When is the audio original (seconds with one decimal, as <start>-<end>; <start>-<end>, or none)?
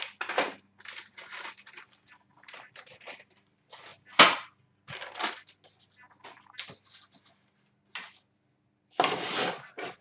0.0-10.0